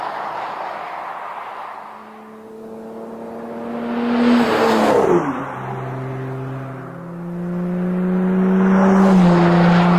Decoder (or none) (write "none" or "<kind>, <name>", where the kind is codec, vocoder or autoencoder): none